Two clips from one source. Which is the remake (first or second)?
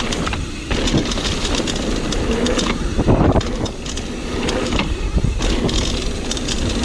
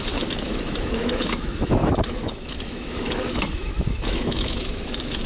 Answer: second